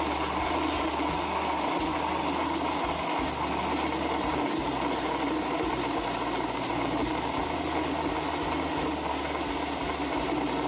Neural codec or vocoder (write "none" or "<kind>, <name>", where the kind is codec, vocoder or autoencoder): none